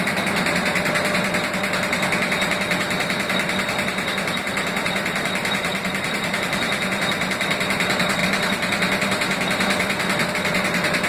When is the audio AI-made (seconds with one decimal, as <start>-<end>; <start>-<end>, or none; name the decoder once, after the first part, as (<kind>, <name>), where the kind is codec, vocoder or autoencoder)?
5.7-6.4 (vocoder, BigVGAN v2); 8.2-10.3